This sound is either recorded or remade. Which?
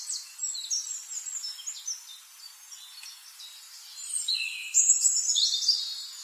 recorded